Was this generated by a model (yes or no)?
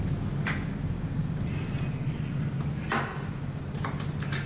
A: no